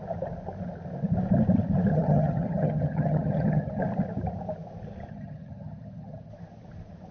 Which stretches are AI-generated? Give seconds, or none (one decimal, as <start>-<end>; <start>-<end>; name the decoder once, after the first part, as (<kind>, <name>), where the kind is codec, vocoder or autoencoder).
1.9-3.8 (vocoder, HiFi-GAN); 5.1-6.3